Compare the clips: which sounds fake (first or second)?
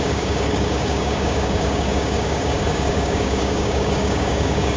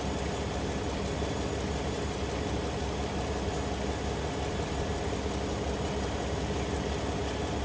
first